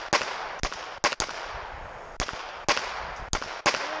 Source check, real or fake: real